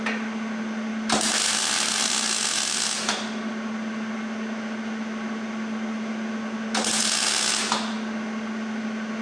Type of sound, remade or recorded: recorded